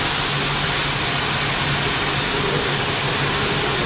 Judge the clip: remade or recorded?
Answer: recorded